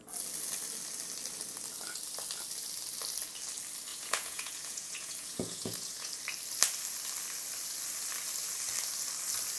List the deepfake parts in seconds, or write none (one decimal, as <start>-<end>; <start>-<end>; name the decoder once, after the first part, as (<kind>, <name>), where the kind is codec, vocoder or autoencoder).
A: 3.9-6.1 (vocoder, Vocos)